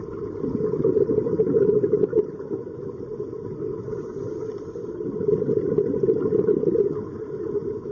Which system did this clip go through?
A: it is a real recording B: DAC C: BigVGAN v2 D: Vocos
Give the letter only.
A